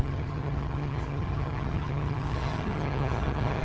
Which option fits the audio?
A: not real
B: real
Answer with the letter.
A